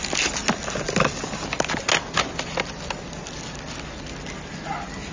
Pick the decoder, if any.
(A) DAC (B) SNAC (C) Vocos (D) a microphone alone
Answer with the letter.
D